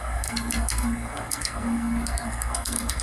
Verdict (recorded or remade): remade